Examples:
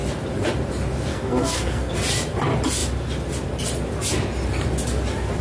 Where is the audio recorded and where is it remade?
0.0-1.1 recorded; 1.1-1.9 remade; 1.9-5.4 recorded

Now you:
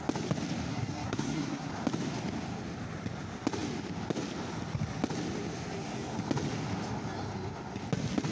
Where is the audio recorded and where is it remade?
0.0-0.7 recorded; 0.7-1.7 remade; 1.7-8.3 recorded

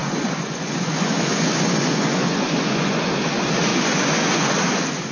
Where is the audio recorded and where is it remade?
0.0-3.1 remade; 3.1-3.7 recorded; 3.7-4.5 remade; 4.5-5.1 recorded

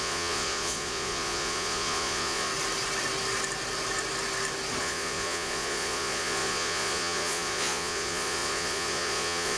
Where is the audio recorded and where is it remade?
0.0-2.5 remade; 2.5-4.8 recorded; 4.8-9.6 remade

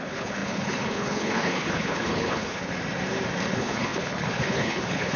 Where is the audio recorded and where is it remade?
0.0-2.7 remade; 2.7-3.5 recorded; 3.5-5.2 remade

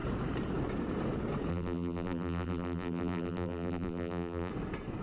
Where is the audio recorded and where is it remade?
0.0-1.5 recorded; 1.5-4.5 remade; 4.5-5.0 recorded